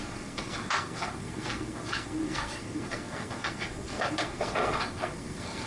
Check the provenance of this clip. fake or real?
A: fake